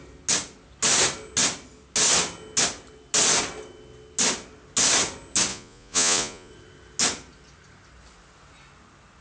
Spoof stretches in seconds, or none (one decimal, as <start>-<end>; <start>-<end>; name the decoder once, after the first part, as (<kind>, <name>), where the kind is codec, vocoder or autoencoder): 5.5-6.5 (vocoder, Vocos)

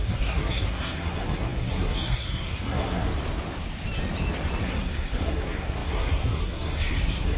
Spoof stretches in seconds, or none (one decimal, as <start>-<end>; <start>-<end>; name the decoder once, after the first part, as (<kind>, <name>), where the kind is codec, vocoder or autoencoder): 0.0-3.1 (codec, SNAC); 4.6-7.4

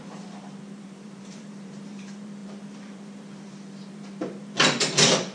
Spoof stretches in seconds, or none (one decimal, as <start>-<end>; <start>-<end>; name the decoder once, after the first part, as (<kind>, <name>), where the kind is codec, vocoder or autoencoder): 0.0-5.3 (vocoder, BigVGAN v2)

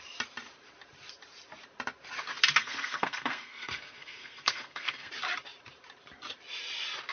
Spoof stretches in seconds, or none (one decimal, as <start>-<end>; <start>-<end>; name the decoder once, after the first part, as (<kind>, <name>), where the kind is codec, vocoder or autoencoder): 2.6-5.1 (codec, SNAC)

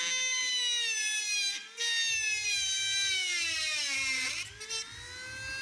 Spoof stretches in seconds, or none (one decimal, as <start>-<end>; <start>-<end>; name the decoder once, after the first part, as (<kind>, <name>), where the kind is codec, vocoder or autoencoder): none

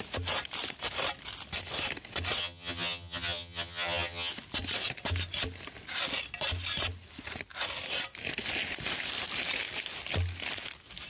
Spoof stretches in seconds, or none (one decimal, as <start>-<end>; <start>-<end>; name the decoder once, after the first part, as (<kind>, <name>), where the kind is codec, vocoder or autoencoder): 2.4-4.3 (vocoder, HiFi-GAN)

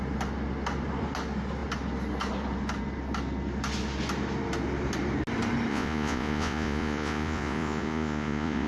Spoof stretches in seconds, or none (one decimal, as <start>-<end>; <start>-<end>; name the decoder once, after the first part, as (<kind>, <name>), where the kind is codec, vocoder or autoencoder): 5.7-8.7 (vocoder, Vocos)

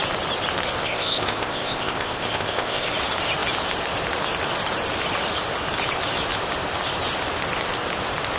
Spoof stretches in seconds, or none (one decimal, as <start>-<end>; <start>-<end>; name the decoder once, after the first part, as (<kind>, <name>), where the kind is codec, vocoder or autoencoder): 0.8-2.9 (codec, ZipCodec)